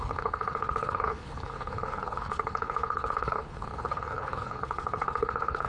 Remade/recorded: remade